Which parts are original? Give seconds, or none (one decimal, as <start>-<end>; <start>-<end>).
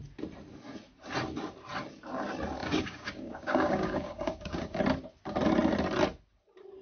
0.0-2.6; 4.8-6.8